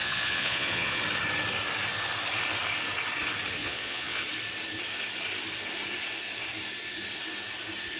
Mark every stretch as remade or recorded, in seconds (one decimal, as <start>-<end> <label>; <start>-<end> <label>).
0.0-1.0 remade; 1.0-3.6 recorded; 3.6-4.2 remade; 4.2-8.0 recorded